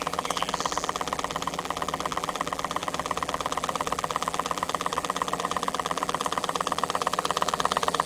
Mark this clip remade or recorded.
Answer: remade